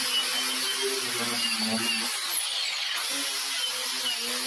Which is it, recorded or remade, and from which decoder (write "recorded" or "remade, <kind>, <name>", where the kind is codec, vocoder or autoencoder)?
recorded